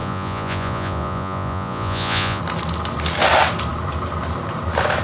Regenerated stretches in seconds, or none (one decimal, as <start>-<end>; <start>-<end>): 0.0-2.4